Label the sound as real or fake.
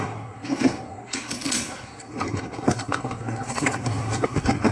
fake